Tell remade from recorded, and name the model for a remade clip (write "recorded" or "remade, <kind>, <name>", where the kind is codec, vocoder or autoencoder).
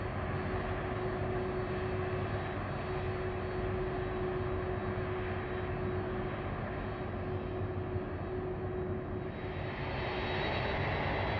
recorded